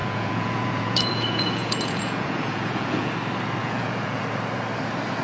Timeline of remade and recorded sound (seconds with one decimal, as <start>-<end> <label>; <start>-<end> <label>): 0.0-3.1 remade; 3.1-3.6 recorded; 3.6-4.2 remade; 4.2-5.2 recorded